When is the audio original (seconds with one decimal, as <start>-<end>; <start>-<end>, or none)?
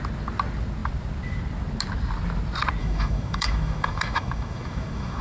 0.0-2.8